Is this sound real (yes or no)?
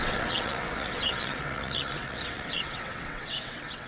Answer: no